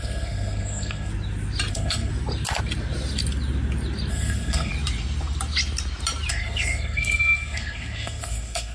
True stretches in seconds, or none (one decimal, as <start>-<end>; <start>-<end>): 1.1-1.7; 2.1-4.1; 4.7-6.3